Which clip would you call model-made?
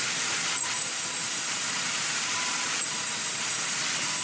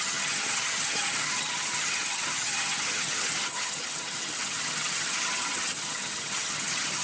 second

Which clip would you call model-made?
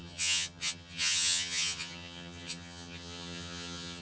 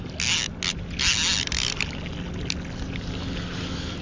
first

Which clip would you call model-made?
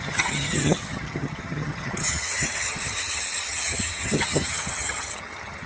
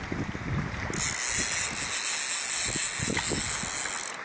first